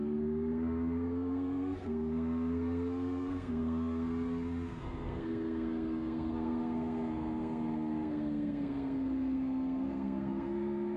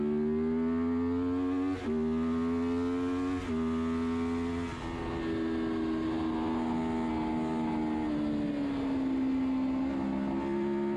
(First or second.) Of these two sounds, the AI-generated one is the first